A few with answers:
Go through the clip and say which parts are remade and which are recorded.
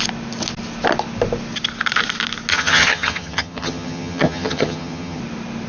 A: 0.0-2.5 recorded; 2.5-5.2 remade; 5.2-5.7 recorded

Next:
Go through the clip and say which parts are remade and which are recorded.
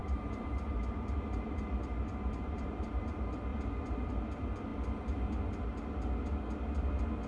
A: 0.0-3.0 remade; 3.0-3.5 recorded; 3.5-4.1 remade; 4.1-7.3 recorded